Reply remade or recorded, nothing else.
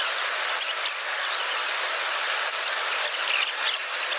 recorded